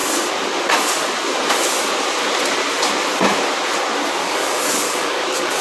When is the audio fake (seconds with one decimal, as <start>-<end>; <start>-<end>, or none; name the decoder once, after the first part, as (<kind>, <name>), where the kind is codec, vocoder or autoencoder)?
4.2-5.6 (codec, DAC)

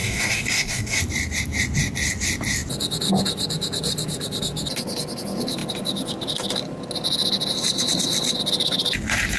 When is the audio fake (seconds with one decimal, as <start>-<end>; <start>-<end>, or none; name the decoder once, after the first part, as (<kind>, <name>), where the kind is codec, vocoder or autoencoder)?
0.0-1.0 (codec, DAC)

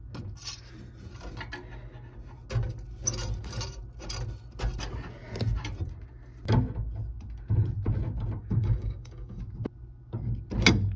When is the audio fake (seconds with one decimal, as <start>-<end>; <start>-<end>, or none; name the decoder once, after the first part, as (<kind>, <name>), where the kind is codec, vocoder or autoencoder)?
8.4-9.4 (codec, DAC)

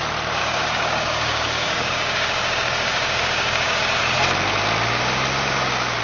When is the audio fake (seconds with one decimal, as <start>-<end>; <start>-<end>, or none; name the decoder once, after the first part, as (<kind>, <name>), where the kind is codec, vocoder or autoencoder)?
0.4-4.0 (codec, DAC)

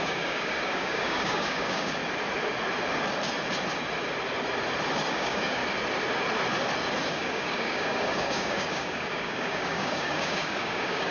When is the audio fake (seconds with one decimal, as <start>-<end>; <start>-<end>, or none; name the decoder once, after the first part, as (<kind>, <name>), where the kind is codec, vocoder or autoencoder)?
0.0-2.0 (codec, DAC); 5.1-5.6; 7.1-11.1

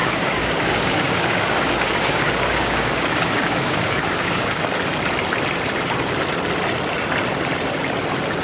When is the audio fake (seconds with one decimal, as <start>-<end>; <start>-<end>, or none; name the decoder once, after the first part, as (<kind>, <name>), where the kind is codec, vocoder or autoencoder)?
0.0-4.6 (codec, DAC)